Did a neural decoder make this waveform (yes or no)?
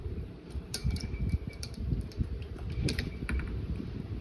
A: yes